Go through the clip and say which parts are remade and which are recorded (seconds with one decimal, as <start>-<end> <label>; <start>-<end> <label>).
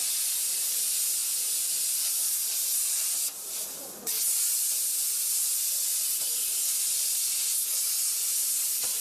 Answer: 0.0-9.0 recorded